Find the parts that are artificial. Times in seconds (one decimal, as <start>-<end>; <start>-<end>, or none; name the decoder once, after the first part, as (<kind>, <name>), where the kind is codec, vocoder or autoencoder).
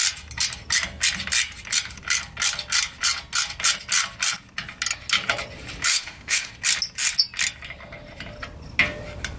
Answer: 5.9-6.5 (autoencoder, DAC-VAE)